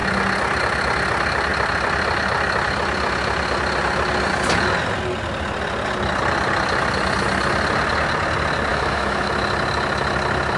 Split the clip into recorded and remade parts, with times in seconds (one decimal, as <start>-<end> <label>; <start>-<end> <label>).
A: 0.0-8.7 recorded; 8.7-9.3 remade; 9.3-10.6 recorded